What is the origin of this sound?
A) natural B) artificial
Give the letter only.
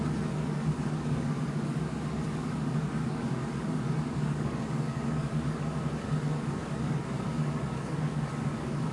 B